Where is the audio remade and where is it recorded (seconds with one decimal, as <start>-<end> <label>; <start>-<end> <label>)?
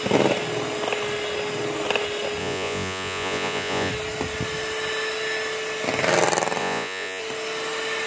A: 0.0-2.4 recorded; 2.4-3.9 remade; 3.9-6.6 recorded; 6.6-7.2 remade; 7.2-8.1 recorded